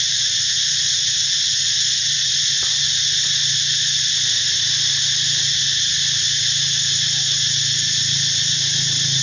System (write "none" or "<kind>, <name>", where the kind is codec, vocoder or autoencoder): none